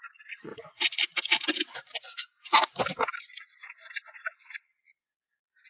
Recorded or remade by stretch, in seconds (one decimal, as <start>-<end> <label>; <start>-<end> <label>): 0.0-0.5 remade; 0.5-3.9 recorded; 3.9-5.7 remade